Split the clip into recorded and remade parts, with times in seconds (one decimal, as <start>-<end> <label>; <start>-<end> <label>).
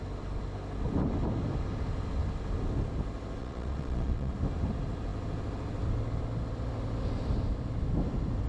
0.0-3.4 recorded; 3.4-4.3 remade; 4.3-8.5 recorded